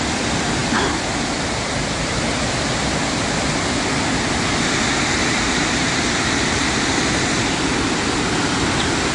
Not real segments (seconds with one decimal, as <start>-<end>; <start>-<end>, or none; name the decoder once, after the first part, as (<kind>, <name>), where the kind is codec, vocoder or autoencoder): 5.2-6.3 (vocoder, BigVGAN v2)